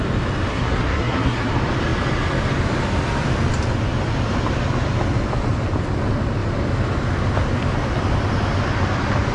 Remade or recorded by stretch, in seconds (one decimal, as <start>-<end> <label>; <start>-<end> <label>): 0.0-0.5 recorded; 0.5-1.5 remade; 1.5-9.3 recorded